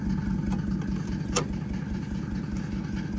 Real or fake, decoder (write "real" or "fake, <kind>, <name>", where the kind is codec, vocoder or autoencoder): real